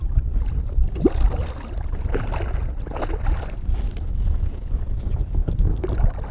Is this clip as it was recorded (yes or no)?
yes